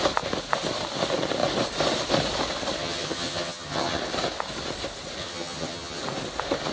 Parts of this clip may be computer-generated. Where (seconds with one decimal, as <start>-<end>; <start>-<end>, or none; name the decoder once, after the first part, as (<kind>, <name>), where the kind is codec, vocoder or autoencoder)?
2.8-4.0 (vocoder, HiFi-GAN); 5.2-6.0

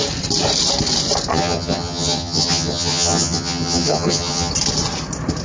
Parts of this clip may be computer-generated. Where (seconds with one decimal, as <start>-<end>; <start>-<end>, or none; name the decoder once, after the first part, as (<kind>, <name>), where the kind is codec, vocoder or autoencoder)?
1.3-4.5 (vocoder, HiFi-GAN)

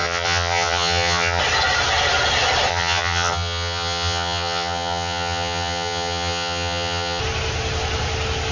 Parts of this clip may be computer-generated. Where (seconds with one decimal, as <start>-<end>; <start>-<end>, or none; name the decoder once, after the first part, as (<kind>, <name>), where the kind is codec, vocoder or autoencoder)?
0.0-1.4 (vocoder, HiFi-GAN); 2.7-7.2